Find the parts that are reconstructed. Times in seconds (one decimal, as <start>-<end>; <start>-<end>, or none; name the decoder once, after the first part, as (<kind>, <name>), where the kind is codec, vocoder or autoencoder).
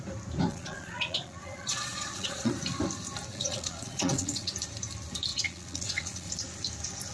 0.5-2.5 (vocoder, Vocos); 3.3-4.5; 5.3-6.3